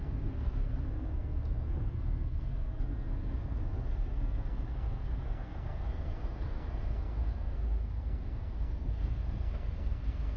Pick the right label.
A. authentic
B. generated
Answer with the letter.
B